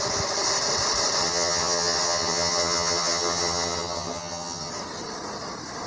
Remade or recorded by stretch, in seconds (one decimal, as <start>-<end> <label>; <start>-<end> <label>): 0.0-1.2 recorded; 1.2-4.7 remade; 4.7-5.9 recorded